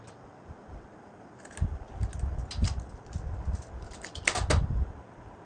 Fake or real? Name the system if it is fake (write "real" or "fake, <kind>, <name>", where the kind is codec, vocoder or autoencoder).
real